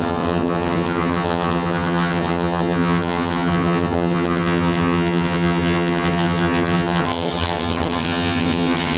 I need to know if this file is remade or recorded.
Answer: remade